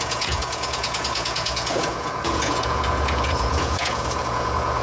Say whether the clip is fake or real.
fake